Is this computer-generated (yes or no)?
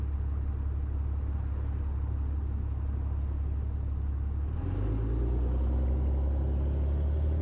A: no